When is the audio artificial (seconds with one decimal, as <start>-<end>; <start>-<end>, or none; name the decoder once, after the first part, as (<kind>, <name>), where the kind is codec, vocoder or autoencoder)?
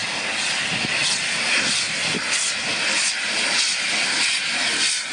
none